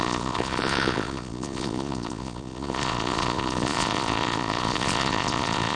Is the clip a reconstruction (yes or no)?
yes